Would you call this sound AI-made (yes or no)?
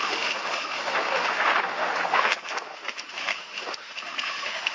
yes